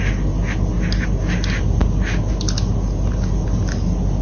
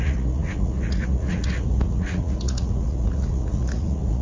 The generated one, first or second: second